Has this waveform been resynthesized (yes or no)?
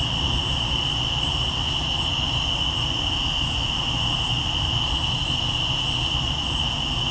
no